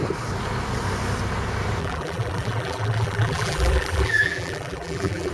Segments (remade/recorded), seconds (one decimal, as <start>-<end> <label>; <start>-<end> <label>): 0.0-1.8 recorded; 1.8-5.3 remade